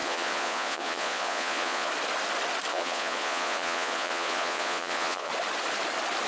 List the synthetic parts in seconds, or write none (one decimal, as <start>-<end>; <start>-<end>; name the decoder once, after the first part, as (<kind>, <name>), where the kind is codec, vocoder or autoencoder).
0.0-1.9 (vocoder, Vocos); 2.7-5.3